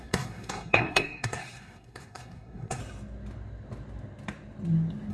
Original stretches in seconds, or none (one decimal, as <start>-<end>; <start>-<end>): 2.8-5.1